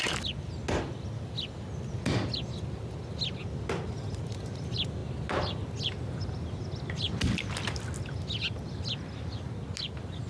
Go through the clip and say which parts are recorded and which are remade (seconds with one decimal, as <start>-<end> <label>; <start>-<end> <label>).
0.0-10.3 recorded